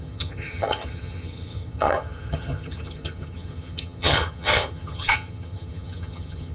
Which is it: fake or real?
fake